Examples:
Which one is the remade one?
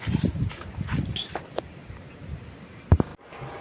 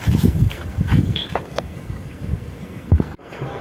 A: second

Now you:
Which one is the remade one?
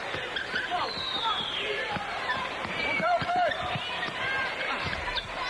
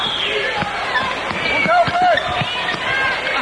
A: first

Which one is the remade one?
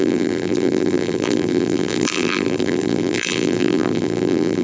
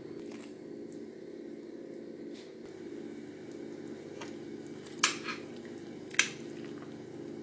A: first